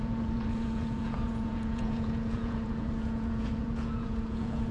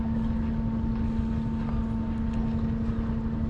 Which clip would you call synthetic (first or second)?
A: first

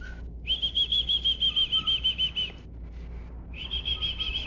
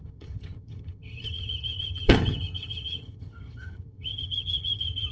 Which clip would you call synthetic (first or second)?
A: second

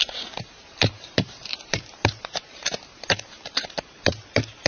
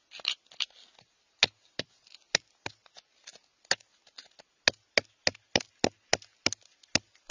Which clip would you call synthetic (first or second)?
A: first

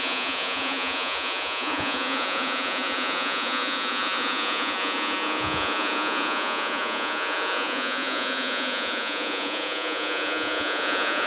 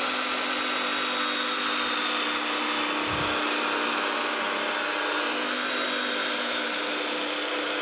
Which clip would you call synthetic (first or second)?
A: first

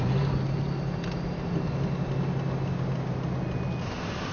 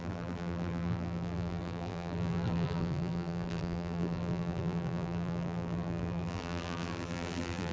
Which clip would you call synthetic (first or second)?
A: second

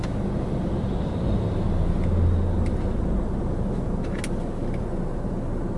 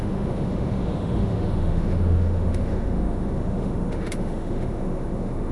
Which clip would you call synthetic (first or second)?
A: second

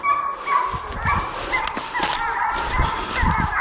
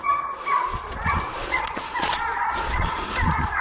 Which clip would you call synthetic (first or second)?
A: second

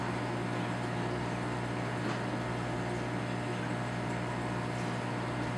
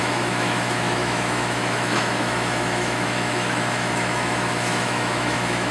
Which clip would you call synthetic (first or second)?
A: second